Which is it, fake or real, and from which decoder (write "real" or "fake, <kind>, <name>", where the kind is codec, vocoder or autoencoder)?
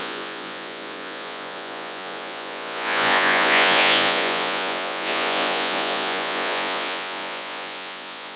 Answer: fake, vocoder, Vocos